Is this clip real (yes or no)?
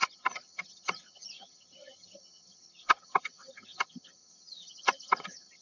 no